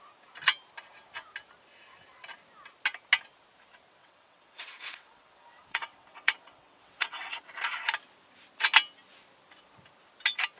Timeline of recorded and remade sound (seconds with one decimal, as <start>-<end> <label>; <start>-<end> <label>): 0.0-4.0 recorded; 4.0-7.4 remade; 7.4-10.6 recorded